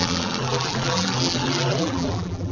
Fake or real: fake